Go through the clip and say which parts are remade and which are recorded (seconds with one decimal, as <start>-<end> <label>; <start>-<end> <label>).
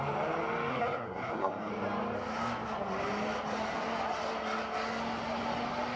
0.0-0.7 recorded; 0.7-1.7 remade; 1.7-6.0 recorded